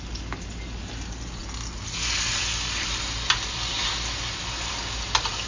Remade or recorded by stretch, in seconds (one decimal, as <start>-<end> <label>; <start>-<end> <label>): 0.0-5.5 recorded